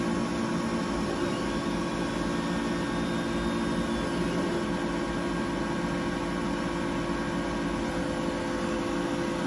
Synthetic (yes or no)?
no